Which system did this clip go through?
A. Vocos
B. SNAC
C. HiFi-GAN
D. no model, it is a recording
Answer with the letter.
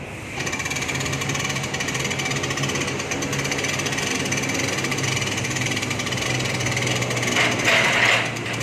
D